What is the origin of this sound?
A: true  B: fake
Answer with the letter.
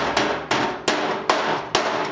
A